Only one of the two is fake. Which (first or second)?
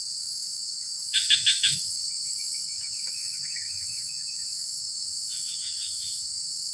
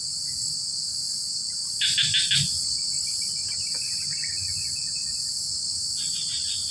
first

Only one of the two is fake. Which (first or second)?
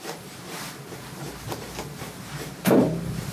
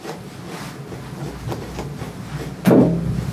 first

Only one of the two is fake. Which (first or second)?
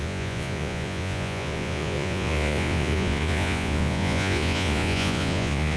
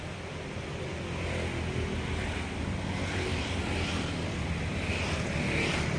first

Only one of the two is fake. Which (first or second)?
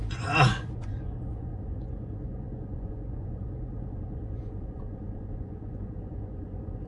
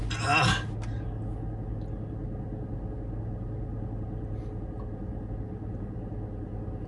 first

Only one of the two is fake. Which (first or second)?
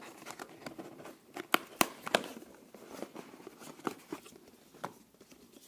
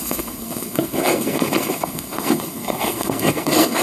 second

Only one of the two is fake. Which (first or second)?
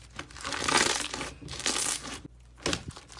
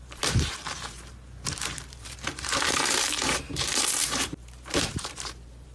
second